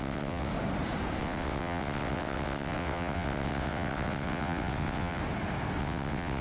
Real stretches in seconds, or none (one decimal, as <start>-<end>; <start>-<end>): 0.5-1.2; 5.2-5.8